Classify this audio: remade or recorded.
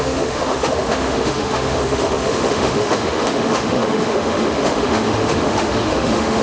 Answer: remade